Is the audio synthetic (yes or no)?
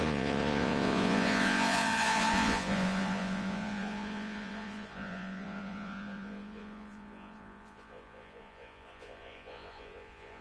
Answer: yes